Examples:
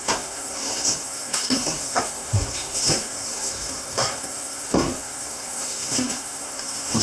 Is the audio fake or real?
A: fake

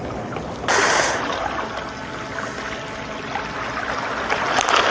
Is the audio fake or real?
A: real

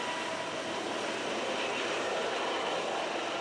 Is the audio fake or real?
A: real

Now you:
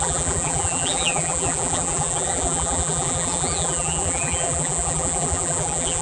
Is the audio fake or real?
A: fake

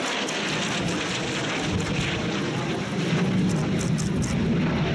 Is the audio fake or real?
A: real